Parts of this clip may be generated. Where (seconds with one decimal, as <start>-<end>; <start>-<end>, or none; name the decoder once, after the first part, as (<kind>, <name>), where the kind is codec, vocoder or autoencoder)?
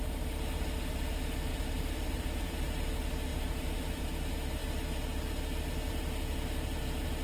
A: 1.5-2.9 (vocoder, BigVGAN v2); 3.3-4.0